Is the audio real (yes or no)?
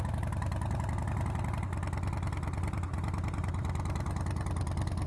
yes